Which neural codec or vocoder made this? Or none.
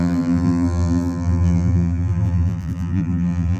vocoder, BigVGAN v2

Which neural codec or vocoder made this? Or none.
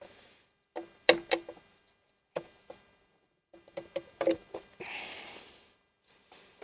none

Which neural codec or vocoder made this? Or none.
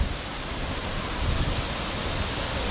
none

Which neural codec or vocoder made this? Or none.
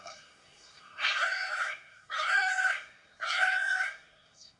codec, SNAC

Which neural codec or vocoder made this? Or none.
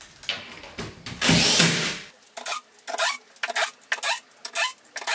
none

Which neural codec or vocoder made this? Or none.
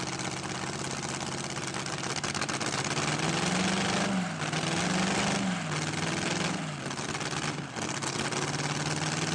none